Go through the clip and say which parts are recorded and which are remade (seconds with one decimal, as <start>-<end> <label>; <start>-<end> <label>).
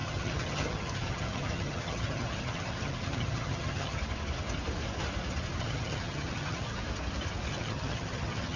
0.0-4.0 remade; 4.0-5.6 recorded; 5.6-6.8 remade; 6.8-7.5 recorded; 7.5-8.6 remade